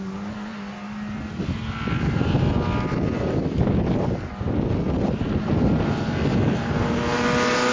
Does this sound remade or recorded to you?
recorded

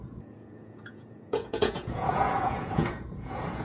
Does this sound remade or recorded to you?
remade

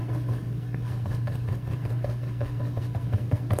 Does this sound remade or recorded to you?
remade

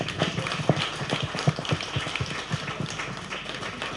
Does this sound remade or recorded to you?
recorded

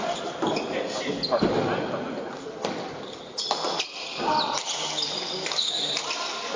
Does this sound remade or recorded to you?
recorded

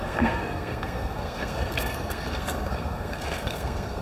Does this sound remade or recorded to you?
remade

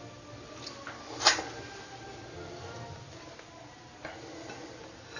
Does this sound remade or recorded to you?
recorded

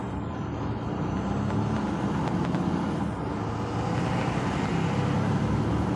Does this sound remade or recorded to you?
recorded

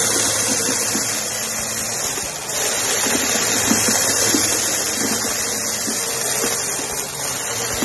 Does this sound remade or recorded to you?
recorded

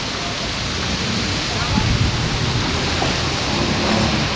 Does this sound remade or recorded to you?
recorded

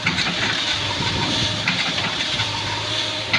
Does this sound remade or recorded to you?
remade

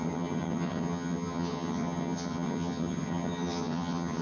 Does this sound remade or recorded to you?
remade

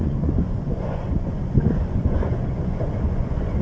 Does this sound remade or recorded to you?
remade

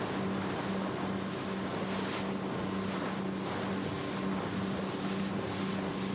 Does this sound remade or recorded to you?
recorded